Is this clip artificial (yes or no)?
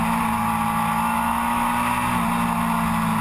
no